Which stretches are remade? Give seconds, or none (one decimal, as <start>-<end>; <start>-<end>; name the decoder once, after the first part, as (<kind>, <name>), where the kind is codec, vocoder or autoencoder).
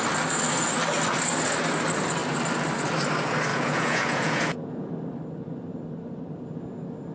3.5-4.9 (vocoder, Vocos)